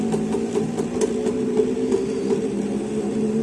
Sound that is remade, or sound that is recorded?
recorded